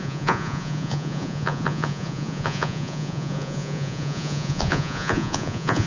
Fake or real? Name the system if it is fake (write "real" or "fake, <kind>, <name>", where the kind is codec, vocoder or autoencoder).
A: fake, vocoder, Vocos